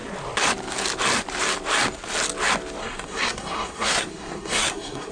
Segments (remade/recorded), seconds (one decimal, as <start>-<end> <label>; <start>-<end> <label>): 0.0-2.8 recorded; 2.8-5.1 remade